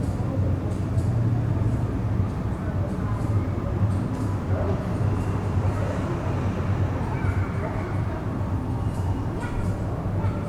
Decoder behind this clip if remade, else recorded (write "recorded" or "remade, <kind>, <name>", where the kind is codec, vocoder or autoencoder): recorded